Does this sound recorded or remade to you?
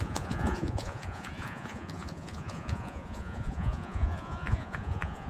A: remade